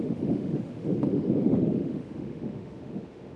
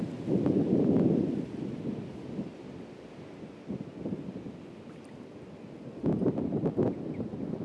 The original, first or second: second